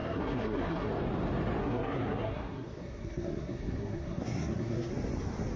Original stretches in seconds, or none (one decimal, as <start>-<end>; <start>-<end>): 0.9-1.6; 4.9-5.6